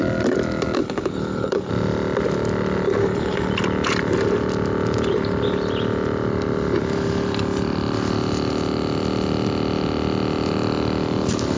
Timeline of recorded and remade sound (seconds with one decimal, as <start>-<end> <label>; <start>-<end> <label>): 0.0-0.8 recorded; 0.8-1.7 remade; 1.7-3.0 recorded; 3.0-3.5 remade; 3.5-11.6 recorded